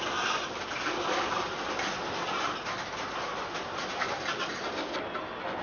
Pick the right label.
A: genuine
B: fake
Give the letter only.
A